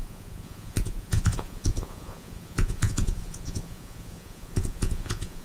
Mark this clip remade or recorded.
remade